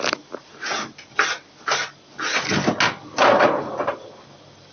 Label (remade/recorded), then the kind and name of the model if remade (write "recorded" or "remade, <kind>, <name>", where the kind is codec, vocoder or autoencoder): recorded